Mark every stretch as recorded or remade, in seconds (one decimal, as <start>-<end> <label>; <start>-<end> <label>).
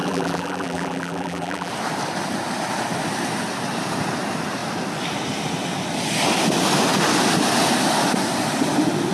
0.0-1.7 remade; 1.7-9.1 recorded